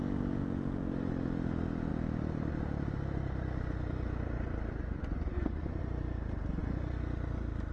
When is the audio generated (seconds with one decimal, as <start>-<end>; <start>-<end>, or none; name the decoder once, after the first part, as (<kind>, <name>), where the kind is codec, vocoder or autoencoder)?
4.8-5.8 (vocoder, Vocos)